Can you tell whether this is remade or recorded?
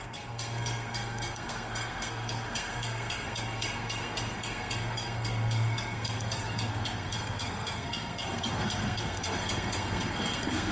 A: remade